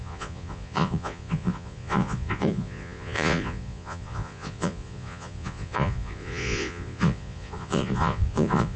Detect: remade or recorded remade